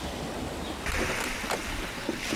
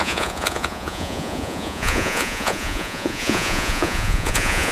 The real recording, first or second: first